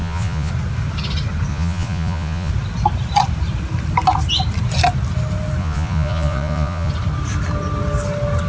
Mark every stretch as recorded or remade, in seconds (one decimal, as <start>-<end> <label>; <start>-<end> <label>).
0.0-0.5 remade; 0.5-1.5 recorded; 1.5-2.5 remade; 2.5-5.6 recorded; 5.6-6.9 remade; 6.9-8.5 recorded